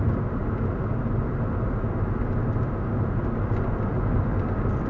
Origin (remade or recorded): recorded